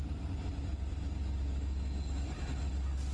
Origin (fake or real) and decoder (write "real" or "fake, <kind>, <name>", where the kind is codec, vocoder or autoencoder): real